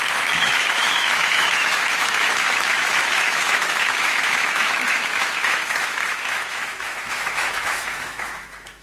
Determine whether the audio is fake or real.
fake